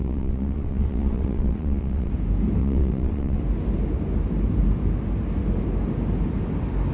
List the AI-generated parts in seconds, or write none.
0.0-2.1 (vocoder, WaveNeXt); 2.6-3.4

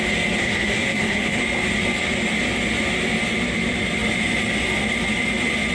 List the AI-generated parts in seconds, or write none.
0.4-1.4 (codec, SNAC)

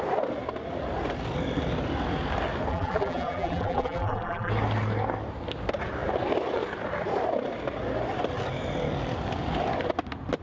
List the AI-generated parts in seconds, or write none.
2.7-4.5 (vocoder, BigVGAN v2)

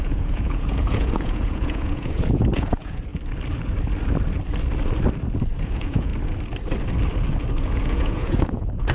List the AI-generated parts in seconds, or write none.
0.0-3.1 (vocoder, Vocos); 5.6-6.1; 7.6-8.9